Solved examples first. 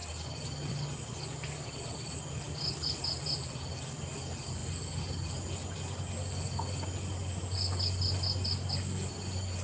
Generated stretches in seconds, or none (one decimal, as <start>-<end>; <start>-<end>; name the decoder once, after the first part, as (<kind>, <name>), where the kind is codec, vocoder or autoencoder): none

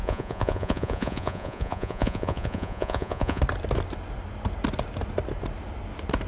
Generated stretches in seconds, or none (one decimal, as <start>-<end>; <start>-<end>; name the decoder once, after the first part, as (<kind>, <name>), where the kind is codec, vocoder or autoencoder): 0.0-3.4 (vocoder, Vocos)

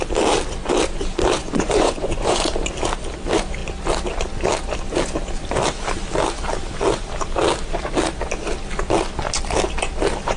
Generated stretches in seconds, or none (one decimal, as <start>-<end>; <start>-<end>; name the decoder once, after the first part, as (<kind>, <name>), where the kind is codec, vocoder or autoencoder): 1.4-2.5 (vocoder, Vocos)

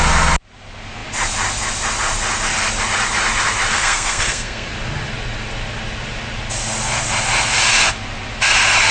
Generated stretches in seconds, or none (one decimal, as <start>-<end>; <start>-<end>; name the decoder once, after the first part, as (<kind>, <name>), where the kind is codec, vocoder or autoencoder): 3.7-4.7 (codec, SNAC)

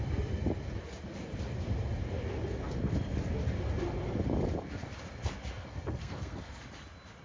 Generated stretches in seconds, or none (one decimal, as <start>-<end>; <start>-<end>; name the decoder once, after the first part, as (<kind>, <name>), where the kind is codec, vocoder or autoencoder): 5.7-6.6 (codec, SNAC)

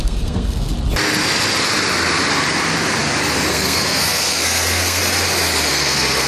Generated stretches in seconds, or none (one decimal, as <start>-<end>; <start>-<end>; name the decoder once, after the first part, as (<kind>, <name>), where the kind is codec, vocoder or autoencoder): 0.0-0.7 (codec, SNAC); 3.5-5.0; 5.7-6.3